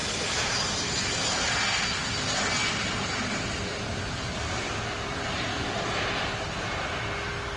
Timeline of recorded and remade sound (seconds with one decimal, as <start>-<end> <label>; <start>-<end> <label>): 0.0-1.0 remade; 1.0-2.6 recorded; 2.6-4.7 remade; 4.7-5.5 recorded; 5.5-6.4 remade; 6.4-7.6 recorded